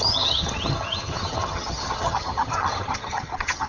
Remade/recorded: remade